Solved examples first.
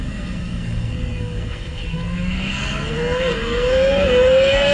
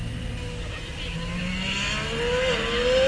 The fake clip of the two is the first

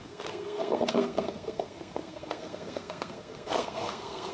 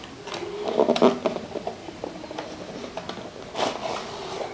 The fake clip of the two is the first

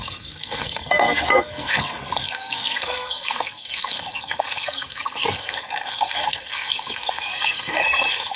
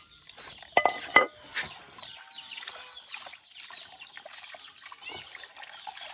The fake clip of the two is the first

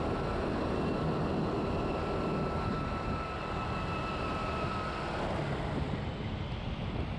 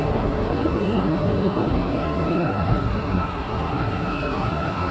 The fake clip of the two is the second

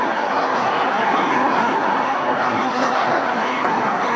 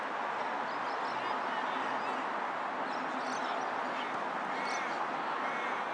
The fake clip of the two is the first